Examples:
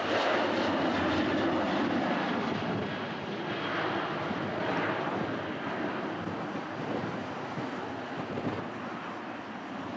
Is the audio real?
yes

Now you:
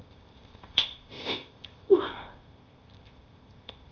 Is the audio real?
no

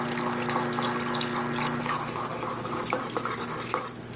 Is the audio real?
yes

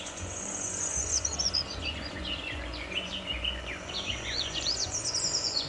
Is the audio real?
no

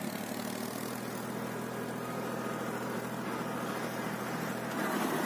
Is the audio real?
yes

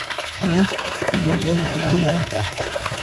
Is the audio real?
no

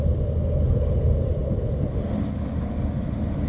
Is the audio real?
yes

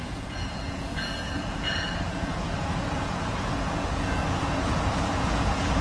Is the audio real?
no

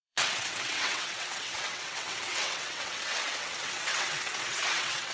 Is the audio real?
no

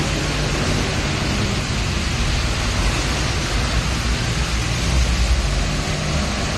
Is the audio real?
yes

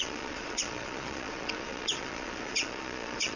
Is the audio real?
no